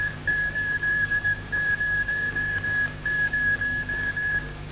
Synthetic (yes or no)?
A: yes